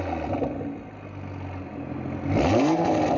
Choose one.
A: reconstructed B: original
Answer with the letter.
B